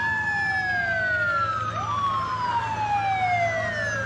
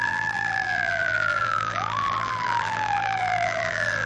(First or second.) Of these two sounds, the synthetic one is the second